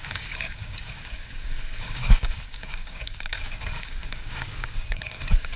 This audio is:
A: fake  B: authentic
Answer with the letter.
A